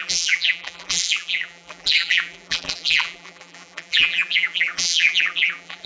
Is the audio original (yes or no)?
no